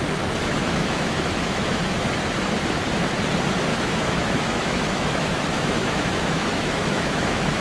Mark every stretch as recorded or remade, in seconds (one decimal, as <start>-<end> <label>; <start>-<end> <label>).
0.0-0.4 recorded; 0.4-2.1 remade; 2.1-3.7 recorded; 3.7-7.6 remade